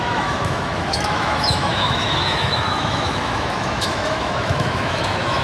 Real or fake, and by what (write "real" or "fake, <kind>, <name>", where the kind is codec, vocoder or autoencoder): fake, autoencoder, DAC-VAE